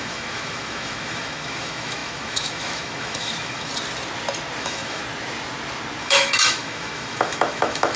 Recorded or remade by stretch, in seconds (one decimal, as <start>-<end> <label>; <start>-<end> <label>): 0.0-3.7 remade; 3.7-4.6 recorded; 4.6-5.0 remade; 5.0-6.0 recorded; 6.0-8.0 remade